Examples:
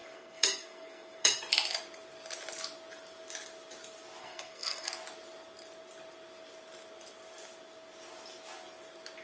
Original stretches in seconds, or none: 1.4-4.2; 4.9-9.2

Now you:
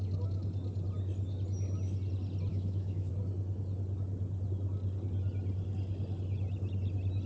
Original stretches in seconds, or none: 0.0-2.5; 3.1-7.3

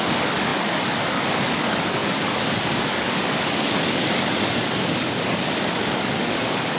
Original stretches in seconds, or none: none

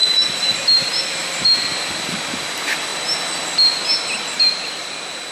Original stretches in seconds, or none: 0.0-5.3

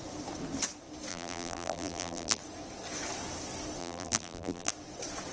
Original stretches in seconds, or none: 0.0-1.1; 2.4-3.8; 4.7-5.3

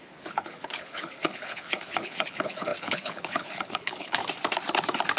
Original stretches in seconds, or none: 4.2-5.2

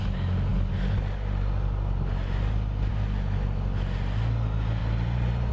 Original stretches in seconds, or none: 0.0-4.8

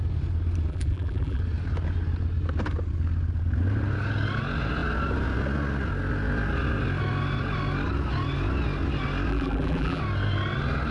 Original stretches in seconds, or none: 0.0-0.7; 1.4-9.3; 10.0-10.9